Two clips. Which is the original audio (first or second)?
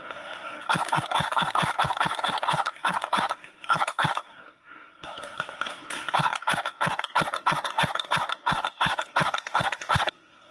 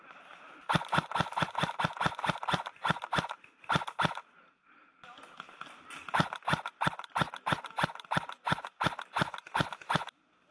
second